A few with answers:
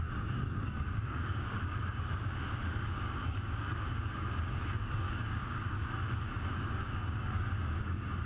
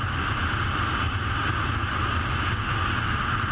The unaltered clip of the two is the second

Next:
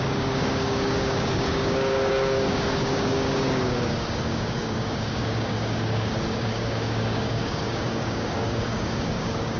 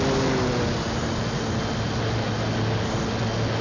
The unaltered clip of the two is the second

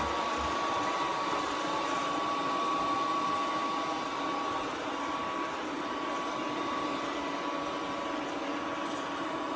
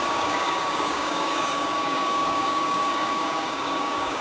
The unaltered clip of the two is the first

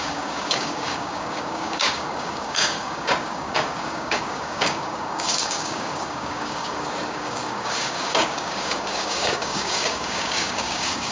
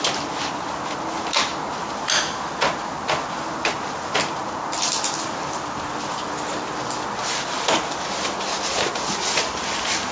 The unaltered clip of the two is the second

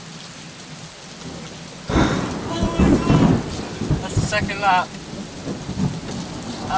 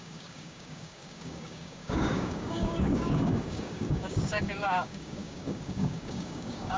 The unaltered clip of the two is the first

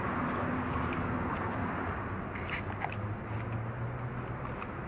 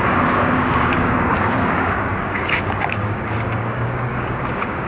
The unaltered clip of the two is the first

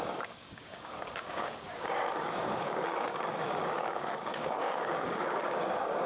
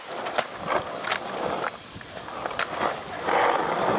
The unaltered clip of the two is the second